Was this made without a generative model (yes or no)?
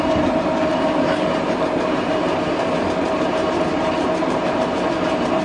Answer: no